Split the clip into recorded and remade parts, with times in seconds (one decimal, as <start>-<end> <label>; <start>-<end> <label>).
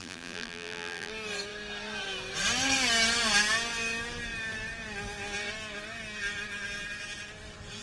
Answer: 0.0-1.1 remade; 1.1-7.8 recorded